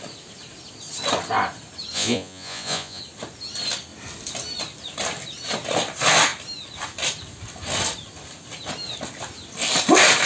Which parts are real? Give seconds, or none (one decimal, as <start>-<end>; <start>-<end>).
0.0-1.9; 3.0-10.3